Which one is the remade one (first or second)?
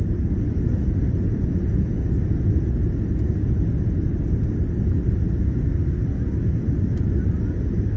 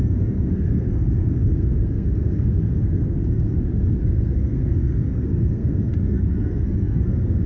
second